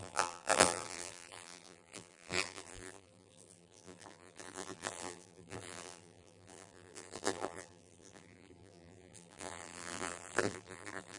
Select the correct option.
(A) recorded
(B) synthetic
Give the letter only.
B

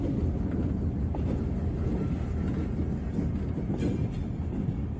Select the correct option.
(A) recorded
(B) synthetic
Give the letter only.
A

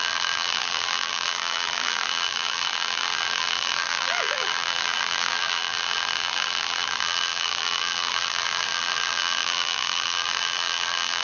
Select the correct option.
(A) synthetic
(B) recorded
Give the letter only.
A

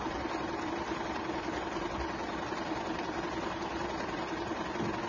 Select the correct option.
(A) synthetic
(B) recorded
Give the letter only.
B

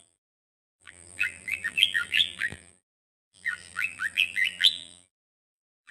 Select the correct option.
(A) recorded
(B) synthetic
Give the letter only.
B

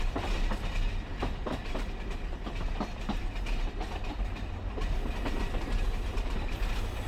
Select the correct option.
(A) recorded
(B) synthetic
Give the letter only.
B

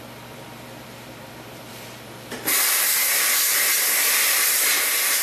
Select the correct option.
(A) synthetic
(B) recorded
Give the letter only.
A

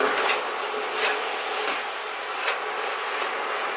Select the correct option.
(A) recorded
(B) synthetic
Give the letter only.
A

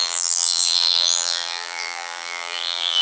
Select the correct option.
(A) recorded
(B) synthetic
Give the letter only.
B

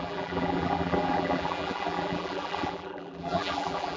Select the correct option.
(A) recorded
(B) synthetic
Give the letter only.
B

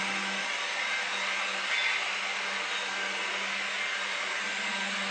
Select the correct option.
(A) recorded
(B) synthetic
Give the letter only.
A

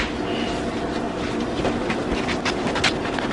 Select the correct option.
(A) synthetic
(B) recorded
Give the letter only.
B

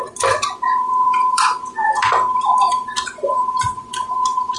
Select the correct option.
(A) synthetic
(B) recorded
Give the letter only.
A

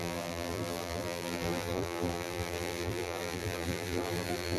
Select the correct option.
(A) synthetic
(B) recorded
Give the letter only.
A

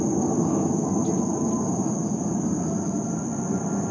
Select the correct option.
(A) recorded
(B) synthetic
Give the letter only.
A